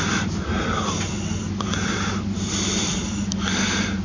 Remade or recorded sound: recorded